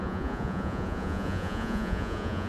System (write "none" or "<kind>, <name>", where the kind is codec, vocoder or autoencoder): vocoder, Vocos